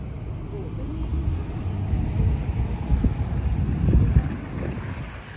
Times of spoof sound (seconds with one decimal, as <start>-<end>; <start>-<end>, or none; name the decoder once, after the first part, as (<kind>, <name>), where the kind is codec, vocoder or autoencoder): none